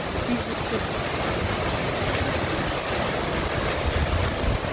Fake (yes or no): no